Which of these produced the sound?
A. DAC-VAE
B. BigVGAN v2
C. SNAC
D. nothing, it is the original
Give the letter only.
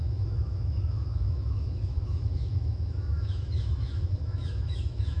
A